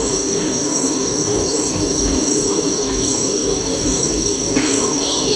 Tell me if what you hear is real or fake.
fake